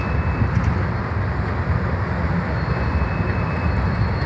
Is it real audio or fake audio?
real